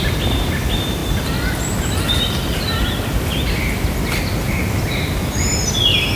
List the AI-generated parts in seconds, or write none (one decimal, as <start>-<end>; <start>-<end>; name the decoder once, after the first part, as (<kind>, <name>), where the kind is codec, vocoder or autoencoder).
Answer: none